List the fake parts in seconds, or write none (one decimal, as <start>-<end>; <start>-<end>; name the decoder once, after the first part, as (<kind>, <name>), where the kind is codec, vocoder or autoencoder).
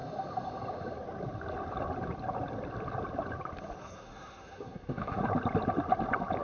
3.8-5.2 (codec, SNAC)